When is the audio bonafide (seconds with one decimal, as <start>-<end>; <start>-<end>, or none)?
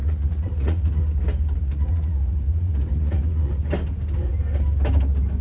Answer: 1.0-1.6; 3.6-5.4